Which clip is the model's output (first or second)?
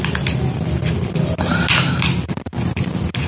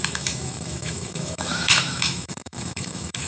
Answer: second